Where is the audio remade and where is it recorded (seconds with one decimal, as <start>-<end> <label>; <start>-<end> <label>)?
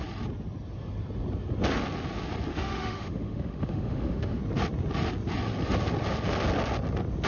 0.0-2.5 recorded; 2.5-4.4 remade; 4.4-7.3 recorded